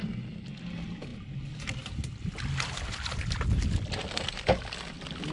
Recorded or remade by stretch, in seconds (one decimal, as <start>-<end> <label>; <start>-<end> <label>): 0.0-5.3 recorded